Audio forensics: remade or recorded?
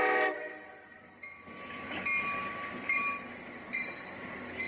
recorded